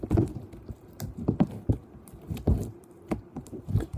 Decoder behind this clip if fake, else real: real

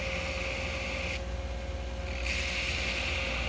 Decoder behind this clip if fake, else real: real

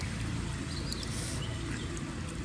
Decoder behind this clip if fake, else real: real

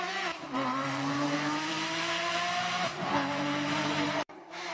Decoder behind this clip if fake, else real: fake, vocoder, BigVGAN v2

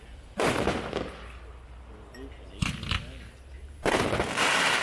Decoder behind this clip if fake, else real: real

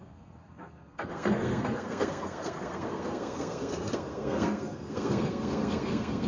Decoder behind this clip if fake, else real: fake, codec, SNAC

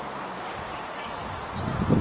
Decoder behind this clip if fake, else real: real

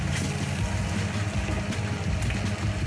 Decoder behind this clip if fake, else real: real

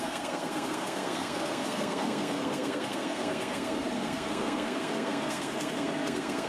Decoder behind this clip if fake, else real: fake, codec, SNAC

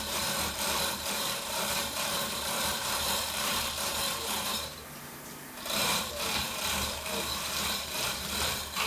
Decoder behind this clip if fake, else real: fake, vocoder, BigVGAN v2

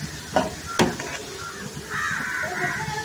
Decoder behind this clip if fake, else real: real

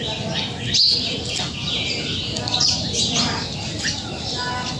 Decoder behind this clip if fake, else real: real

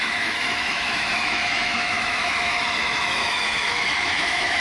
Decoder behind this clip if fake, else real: fake, autoencoder, DAC-VAE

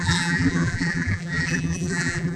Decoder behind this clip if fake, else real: fake, vocoder, BigVGAN v2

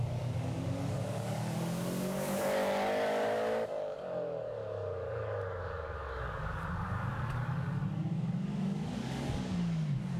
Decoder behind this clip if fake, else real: fake, codec, DAC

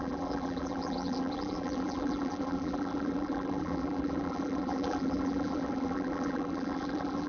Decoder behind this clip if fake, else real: fake, vocoder, BigVGAN v2